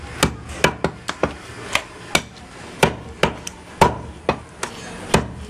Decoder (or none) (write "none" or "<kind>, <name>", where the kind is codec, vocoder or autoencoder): none